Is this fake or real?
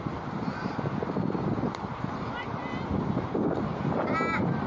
real